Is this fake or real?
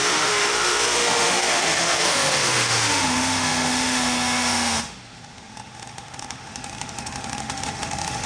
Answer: fake